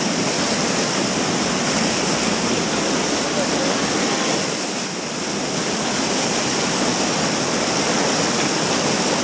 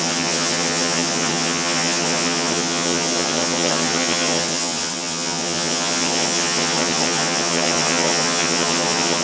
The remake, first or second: second